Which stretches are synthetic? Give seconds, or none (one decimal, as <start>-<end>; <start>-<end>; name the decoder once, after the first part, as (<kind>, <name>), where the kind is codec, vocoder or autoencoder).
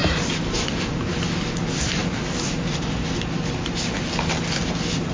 none